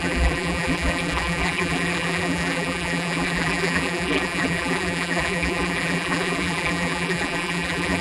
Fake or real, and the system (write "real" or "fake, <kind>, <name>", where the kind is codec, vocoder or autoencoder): fake, vocoder, BigVGAN v2